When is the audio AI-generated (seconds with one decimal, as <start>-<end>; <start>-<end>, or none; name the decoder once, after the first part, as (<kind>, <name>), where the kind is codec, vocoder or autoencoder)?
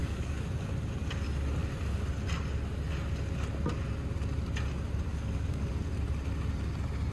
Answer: 0.0-0.5 (codec, DAC); 5.1-5.7